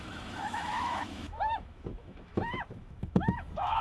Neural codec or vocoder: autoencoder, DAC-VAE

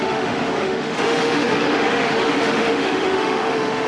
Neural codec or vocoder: autoencoder, DAC-VAE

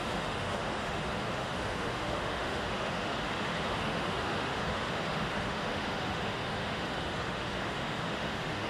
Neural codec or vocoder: autoencoder, DAC-VAE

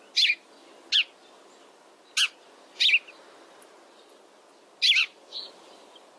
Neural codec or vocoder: none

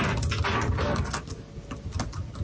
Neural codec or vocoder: none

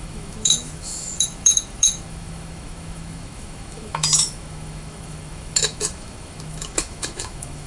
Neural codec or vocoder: autoencoder, DAC-VAE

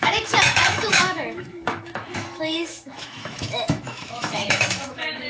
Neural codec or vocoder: autoencoder, DAC-VAE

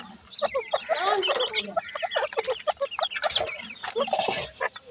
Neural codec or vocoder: none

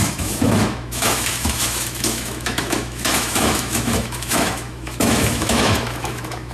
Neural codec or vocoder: autoencoder, DAC-VAE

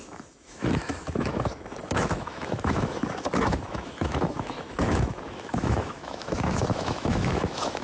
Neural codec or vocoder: autoencoder, DAC-VAE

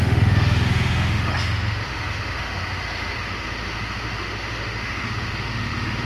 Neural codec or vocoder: autoencoder, DAC-VAE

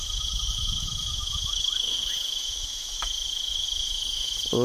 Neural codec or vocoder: autoencoder, DAC-VAE